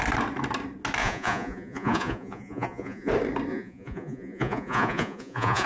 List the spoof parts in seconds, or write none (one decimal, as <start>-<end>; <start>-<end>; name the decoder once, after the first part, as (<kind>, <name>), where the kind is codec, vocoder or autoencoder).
1.0-3.1 (vocoder, Vocos); 3.5-5.7